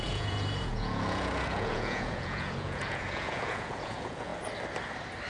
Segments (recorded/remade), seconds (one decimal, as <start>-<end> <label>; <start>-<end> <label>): 0.0-4.3 remade; 4.3-5.3 recorded